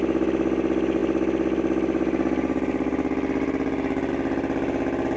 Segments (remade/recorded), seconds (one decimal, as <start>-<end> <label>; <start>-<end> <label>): 0.0-5.2 recorded